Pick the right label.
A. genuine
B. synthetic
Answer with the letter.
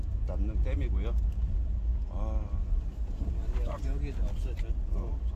A